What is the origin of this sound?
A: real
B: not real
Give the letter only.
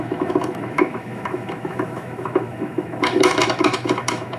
B